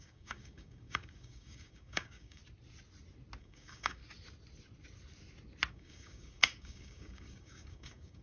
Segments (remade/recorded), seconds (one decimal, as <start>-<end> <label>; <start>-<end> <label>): 0.0-2.4 remade; 2.4-3.4 recorded; 3.4-4.0 remade; 4.0-5.7 recorded; 5.7-8.2 remade